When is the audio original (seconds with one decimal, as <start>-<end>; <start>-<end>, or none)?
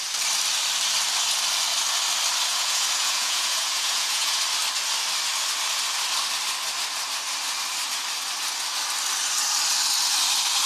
0.0-2.5; 4.4-10.7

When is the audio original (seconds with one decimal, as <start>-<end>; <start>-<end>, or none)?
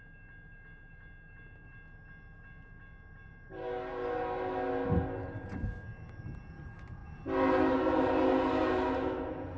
0.0-9.6